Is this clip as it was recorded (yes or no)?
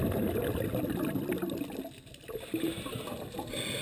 yes